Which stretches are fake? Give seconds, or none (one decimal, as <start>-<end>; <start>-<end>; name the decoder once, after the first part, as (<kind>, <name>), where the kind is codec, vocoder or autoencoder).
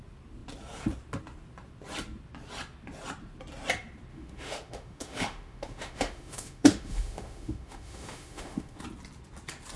4.1-8.8 (autoencoder, DAC-VAE)